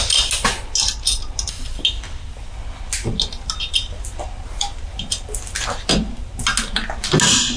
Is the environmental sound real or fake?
real